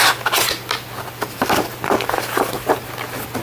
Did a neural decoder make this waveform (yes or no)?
no